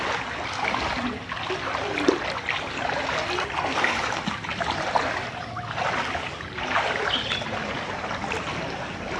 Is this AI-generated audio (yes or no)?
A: no